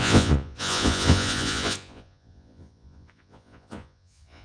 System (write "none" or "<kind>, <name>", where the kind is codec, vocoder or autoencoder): vocoder, Vocos